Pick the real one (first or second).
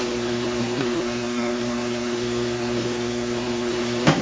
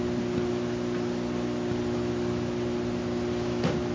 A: second